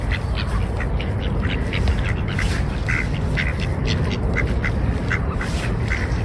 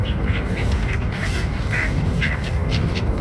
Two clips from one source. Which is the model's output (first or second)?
second